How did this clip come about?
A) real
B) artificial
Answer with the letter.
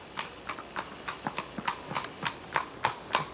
A